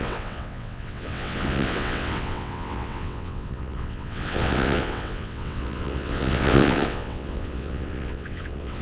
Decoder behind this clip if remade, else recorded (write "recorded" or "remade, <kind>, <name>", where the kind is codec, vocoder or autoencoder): remade, vocoder, WaveNeXt